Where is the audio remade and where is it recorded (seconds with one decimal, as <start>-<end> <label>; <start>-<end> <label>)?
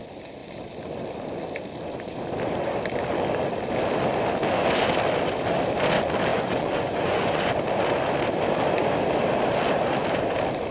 0.0-6.3 recorded; 6.3-7.5 remade; 7.5-10.7 recorded